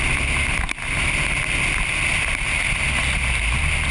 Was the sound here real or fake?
real